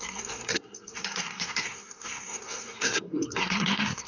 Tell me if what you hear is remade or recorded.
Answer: remade